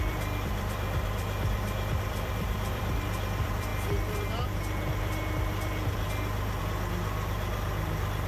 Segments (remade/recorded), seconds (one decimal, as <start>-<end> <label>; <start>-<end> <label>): 0.0-3.7 remade; 3.7-6.6 recorded; 6.6-8.3 remade